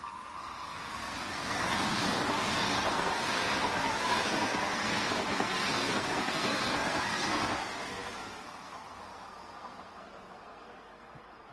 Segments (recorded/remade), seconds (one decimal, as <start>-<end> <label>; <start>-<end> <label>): 0.0-11.5 remade